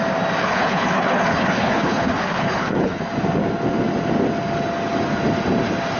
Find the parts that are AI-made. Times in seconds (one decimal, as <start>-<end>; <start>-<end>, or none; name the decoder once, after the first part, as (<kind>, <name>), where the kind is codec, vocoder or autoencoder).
0.4-3.0 (codec, HILCodec)

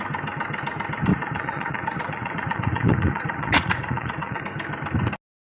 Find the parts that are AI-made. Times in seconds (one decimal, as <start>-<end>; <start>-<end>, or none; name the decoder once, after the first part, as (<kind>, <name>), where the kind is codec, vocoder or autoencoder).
1.1-4.4 (vocoder, Vocos)

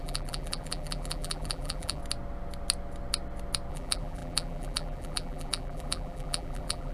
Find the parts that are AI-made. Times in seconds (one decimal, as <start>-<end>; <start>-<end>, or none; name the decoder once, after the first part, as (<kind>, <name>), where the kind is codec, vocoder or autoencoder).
0.0-2.0 (vocoder, BigVGAN v2); 3.7-6.9

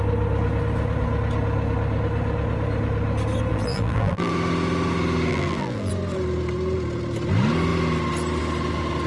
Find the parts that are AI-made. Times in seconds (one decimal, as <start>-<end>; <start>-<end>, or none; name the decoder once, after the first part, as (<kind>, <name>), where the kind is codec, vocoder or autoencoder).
3.5-4.3 (vocoder, BigVGAN v2); 5.3-5.9